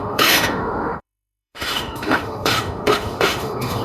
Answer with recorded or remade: remade